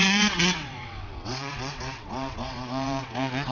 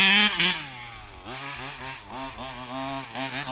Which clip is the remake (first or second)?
first